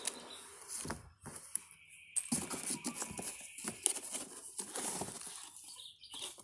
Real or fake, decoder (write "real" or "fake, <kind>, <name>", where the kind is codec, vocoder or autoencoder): real